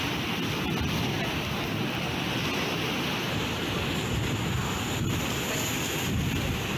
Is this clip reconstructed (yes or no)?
no